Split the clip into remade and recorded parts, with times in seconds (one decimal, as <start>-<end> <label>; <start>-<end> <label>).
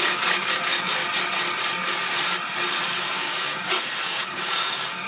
0.0-1.0 remade; 1.0-3.0 recorded; 3.0-5.1 remade